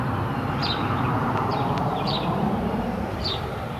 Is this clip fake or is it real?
fake